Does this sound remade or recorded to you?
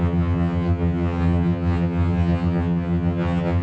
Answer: remade